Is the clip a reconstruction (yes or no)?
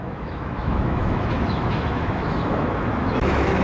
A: yes